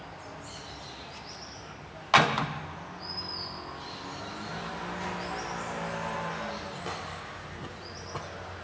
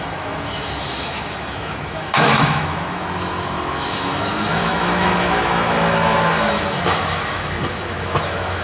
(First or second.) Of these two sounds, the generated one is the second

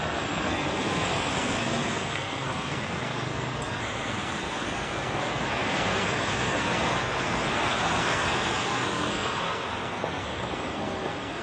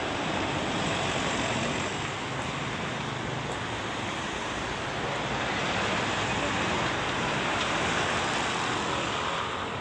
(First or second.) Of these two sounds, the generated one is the first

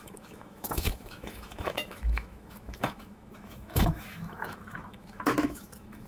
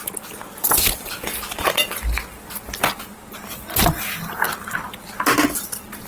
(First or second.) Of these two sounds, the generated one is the first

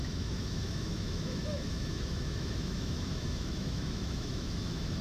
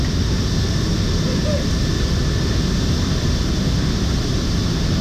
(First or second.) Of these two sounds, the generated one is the first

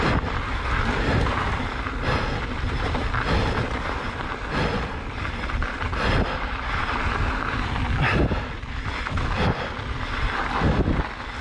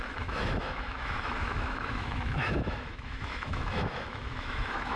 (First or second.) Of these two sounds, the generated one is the second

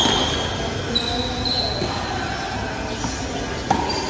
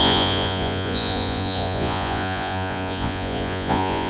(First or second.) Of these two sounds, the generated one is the second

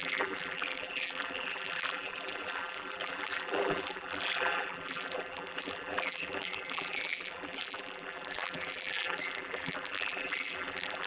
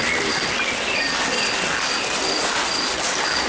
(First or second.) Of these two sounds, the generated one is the first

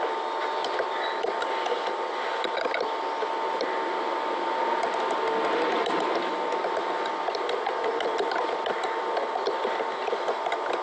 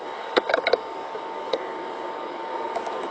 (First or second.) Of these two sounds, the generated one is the second